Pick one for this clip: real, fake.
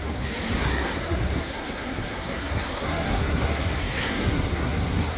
fake